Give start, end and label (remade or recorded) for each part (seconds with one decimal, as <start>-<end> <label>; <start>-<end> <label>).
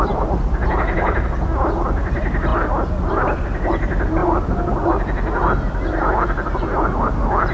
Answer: 0.0-7.5 recorded